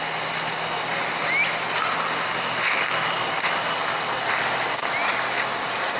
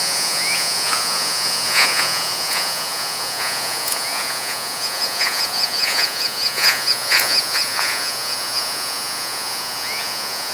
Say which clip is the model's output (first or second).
second